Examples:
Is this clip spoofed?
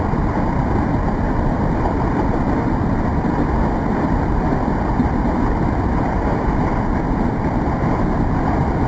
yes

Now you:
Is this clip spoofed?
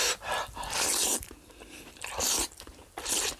yes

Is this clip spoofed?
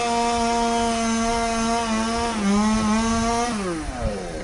no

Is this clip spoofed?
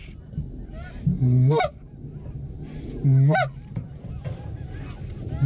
no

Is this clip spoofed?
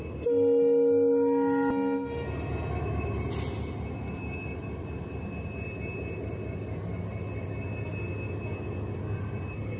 no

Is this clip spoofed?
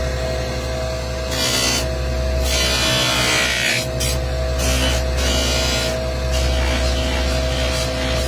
no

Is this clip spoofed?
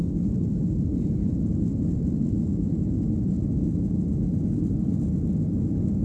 no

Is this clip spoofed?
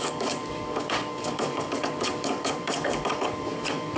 yes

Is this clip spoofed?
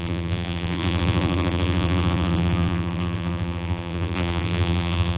yes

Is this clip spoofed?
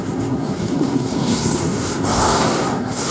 yes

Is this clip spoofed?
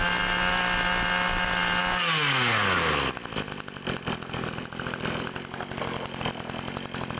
no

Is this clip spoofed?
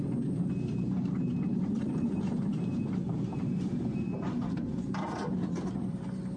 yes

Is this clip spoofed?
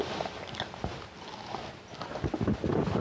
no